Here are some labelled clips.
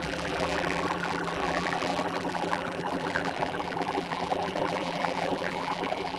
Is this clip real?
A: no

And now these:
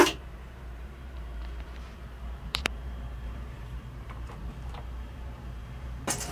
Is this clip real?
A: no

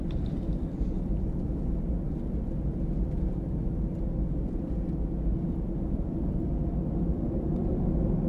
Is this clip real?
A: yes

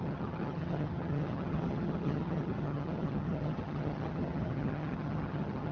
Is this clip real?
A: no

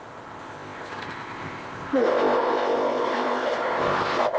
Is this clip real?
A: no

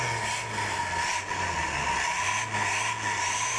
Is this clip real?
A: yes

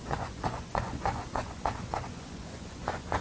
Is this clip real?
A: no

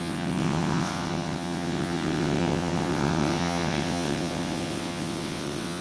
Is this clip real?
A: no